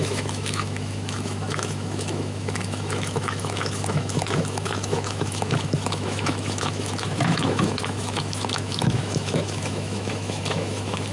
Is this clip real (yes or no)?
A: no